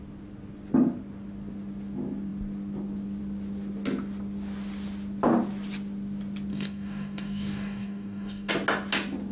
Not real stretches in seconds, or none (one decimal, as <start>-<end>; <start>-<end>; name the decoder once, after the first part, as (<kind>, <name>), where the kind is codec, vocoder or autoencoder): 6.5-8.5 (codec, DAC)